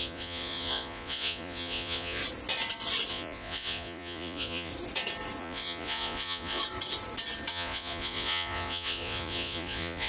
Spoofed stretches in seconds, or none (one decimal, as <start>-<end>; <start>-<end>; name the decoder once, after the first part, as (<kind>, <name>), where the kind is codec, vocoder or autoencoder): 0.0-2.2 (vocoder, Vocos); 3.1-4.7; 5.4-6.6; 7.5-10.1